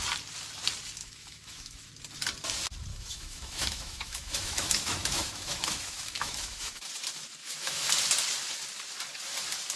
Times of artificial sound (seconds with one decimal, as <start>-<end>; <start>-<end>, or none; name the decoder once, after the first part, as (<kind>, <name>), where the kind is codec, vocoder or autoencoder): 1.0-1.9 (autoencoder, DAC-VAE); 2.9-6.8; 7.4-7.9